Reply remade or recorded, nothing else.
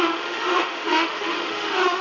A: remade